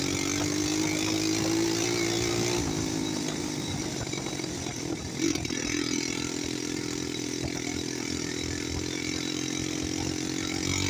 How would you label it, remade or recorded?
recorded